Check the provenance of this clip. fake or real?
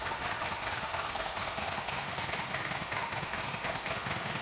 fake